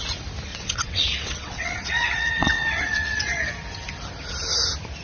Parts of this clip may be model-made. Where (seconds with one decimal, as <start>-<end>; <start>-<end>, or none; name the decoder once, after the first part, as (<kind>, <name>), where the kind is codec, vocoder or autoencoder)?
0.5-3.5 (vocoder, WaveNeXt)